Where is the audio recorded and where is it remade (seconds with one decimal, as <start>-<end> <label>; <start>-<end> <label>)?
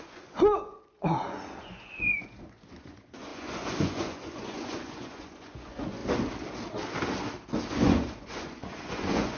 0.0-6.0 remade; 6.0-7.7 recorded; 7.7-9.4 remade